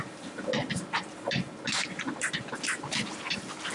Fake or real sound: real